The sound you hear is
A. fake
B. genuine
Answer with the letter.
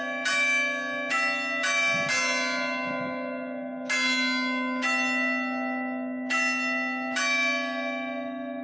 B